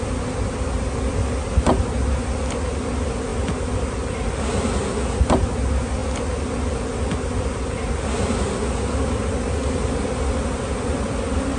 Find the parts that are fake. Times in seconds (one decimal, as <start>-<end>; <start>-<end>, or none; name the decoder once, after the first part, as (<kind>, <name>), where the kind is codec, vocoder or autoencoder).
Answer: none